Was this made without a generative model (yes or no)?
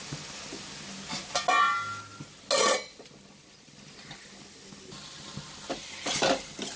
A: yes